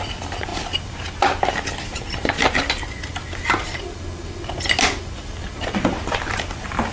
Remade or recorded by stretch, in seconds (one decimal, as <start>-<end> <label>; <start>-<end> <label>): 0.0-6.9 recorded

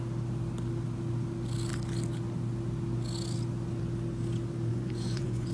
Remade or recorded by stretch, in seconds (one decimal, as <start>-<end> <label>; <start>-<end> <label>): 0.0-4.7 recorded; 4.7-5.5 remade

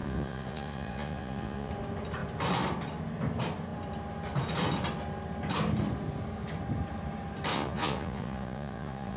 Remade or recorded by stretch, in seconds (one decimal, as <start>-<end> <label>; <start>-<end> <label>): 0.0-1.7 remade; 1.7-7.5 recorded; 7.5-9.2 remade

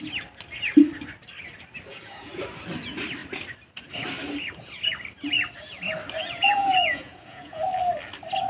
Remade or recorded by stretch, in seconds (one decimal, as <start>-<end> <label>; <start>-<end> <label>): 0.0-1.9 recorded; 1.9-2.4 remade; 2.4-6.2 recorded; 6.2-7.6 remade; 7.6-8.5 recorded

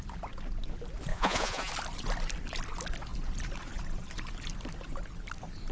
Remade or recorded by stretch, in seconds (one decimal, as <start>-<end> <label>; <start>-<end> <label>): 0.0-1.1 recorded; 1.1-1.7 remade; 1.7-5.7 recorded

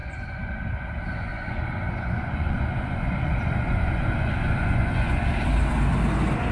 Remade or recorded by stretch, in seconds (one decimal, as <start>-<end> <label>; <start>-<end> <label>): 0.0-0.6 remade; 0.6-1.3 recorded; 1.3-5.2 remade; 5.2-6.5 recorded

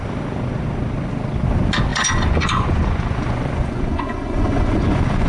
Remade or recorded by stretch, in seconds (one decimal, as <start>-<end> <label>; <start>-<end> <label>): 0.0-1.9 recorded; 1.9-5.3 remade

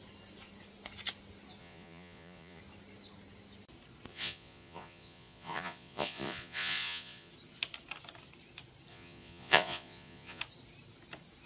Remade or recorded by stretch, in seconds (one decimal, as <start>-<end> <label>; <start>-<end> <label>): 0.0-1.6 recorded; 1.6-2.6 remade; 2.6-4.1 recorded; 4.1-7.3 remade; 7.3-8.9 recorded; 8.9-10.4 remade; 10.4-11.5 recorded